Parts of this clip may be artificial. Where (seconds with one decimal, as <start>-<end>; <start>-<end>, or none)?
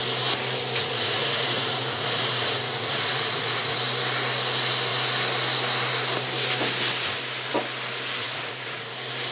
0.8-3.8; 8.2-8.9